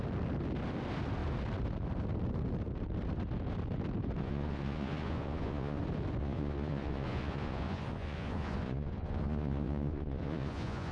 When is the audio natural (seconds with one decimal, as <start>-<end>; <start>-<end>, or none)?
0.0-4.2; 5.8-6.2